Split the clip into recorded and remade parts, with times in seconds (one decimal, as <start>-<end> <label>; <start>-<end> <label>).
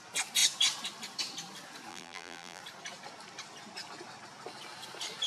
0.0-1.9 recorded; 1.9-2.6 remade; 2.6-5.3 recorded